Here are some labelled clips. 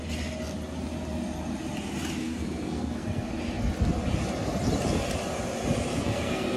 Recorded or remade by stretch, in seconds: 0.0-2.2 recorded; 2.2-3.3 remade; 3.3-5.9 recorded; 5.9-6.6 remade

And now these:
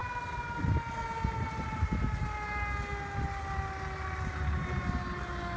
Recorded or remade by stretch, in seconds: 0.0-5.6 recorded

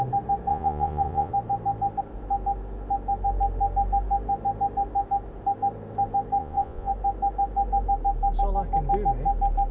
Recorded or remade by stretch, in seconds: 0.0-0.5 recorded; 0.5-1.3 remade; 1.3-6.4 recorded; 6.4-6.9 remade; 6.9-9.7 recorded

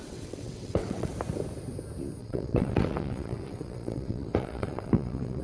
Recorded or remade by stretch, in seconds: 0.0-1.1 remade; 1.1-2.2 recorded; 2.2-5.4 remade

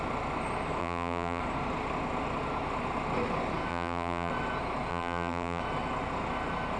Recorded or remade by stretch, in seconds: 0.0-0.8 recorded; 0.8-1.4 remade; 1.4-3.7 recorded; 3.7-4.3 remade; 4.3-4.9 recorded; 4.9-5.6 remade; 5.6-6.8 recorded

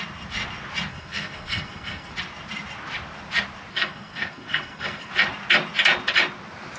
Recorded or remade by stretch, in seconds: 0.0-0.9 recorded; 0.9-2.1 remade; 2.1-3.7 recorded; 3.7-5.1 remade; 5.1-6.8 recorded

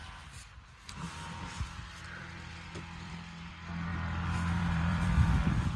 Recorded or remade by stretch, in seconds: 0.0-3.5 remade; 3.5-3.9 recorded; 3.9-5.8 remade